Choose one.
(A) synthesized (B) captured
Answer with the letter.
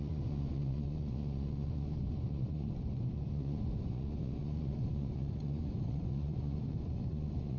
A